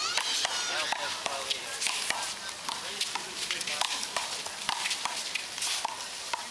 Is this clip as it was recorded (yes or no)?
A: yes